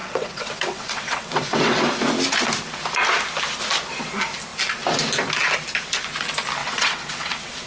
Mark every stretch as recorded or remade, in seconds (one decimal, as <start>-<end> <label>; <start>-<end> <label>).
0.0-1.9 remade; 1.9-6.6 recorded; 6.6-7.7 remade